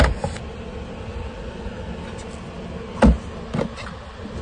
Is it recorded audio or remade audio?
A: recorded